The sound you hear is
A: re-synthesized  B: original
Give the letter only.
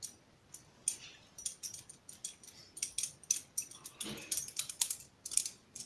B